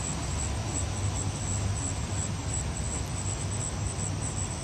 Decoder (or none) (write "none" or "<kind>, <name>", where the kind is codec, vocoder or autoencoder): none